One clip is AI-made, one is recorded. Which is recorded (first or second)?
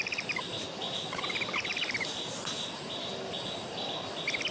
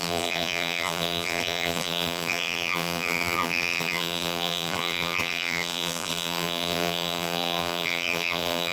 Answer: first